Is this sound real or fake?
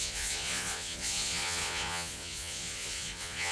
fake